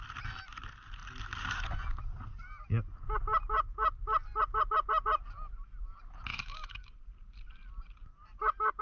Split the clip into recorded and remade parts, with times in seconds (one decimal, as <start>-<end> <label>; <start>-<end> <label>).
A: 0.0-6.3 recorded; 6.3-6.9 remade; 6.9-8.8 recorded